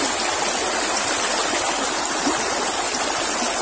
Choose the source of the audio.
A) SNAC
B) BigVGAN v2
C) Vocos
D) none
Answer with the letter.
D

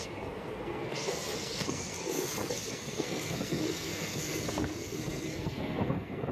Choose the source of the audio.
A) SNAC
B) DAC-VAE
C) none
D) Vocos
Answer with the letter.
A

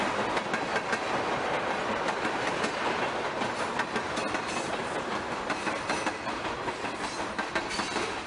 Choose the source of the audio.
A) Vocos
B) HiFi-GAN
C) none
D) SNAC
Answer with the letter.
C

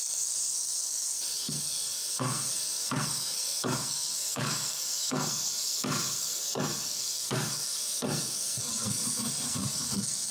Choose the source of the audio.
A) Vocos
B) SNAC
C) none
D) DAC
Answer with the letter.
B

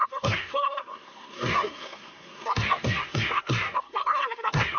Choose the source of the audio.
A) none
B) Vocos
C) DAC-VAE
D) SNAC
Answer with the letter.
D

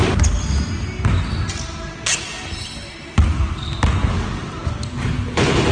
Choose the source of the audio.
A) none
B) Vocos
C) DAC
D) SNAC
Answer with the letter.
A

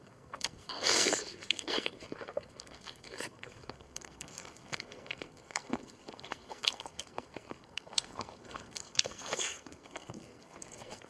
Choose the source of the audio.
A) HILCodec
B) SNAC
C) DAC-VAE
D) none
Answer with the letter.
B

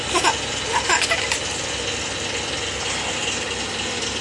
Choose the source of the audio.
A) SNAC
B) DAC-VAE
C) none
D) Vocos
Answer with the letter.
C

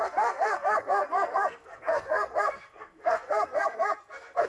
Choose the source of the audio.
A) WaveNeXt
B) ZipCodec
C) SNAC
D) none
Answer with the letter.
C